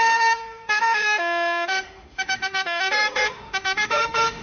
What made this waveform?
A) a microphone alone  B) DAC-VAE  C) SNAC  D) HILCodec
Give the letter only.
B